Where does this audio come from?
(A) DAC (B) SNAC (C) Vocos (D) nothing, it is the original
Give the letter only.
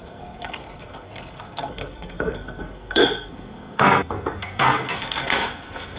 B